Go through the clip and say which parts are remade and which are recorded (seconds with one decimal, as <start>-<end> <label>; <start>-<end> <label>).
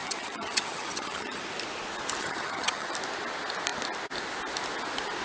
0.0-1.4 remade; 1.4-2.2 recorded; 2.2-2.9 remade; 2.9-5.2 recorded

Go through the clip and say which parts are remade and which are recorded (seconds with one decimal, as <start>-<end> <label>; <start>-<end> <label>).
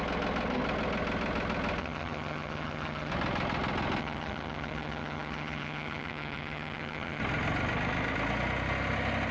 0.0-1.8 recorded; 1.8-3.1 remade; 3.1-4.0 recorded; 4.0-7.2 remade; 7.2-9.3 recorded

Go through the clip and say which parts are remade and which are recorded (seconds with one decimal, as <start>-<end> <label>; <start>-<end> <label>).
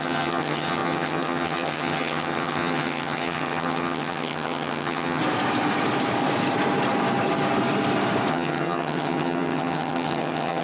0.0-5.2 remade; 5.2-8.3 recorded; 8.3-10.6 remade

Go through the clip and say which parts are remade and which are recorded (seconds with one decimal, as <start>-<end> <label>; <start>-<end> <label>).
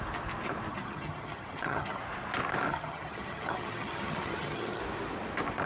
0.0-0.7 recorded; 0.7-2.0 remade; 2.0-2.7 recorded; 2.7-4.8 remade; 4.8-5.7 recorded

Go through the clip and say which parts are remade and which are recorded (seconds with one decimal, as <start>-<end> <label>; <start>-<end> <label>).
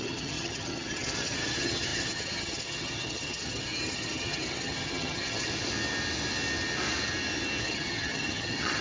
0.0-5.5 remade; 5.5-7.6 recorded; 7.6-8.8 remade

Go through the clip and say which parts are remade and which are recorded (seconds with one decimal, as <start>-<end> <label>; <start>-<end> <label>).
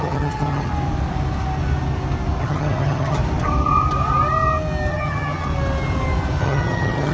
0.0-0.7 remade; 0.7-2.4 recorded; 2.4-3.2 remade; 3.2-4.9 recorded; 4.9-5.5 remade; 5.5-6.4 recorded; 6.4-7.1 remade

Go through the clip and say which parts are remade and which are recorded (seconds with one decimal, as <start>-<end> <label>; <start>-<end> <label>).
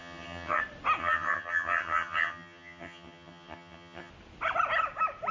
0.0-0.6 remade; 0.6-1.0 recorded; 1.0-4.1 remade; 4.1-5.3 recorded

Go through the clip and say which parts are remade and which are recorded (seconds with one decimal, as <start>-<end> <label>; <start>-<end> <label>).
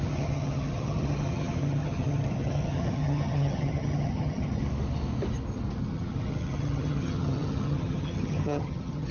0.0-4.6 remade; 4.6-5.8 recorded; 5.8-9.1 remade